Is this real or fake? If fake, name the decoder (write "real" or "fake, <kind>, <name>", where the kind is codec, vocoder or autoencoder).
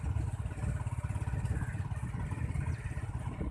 real